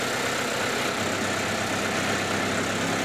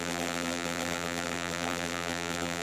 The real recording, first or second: first